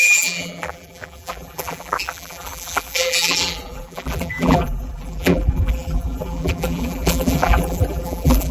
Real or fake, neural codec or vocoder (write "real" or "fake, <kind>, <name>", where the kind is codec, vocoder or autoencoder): fake, vocoder, BigVGAN v2